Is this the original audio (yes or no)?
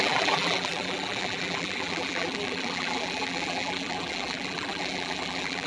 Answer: no